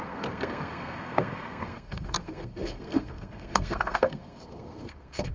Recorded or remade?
remade